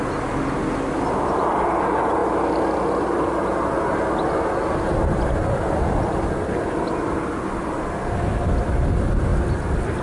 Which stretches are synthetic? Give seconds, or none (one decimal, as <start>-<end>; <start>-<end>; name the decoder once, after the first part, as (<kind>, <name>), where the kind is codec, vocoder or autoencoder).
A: none